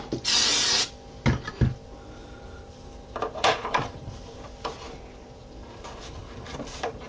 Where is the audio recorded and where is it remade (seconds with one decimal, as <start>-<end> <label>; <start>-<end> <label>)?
0.0-2.2 recorded; 2.2-4.2 remade; 4.2-5.4 recorded; 5.4-7.1 remade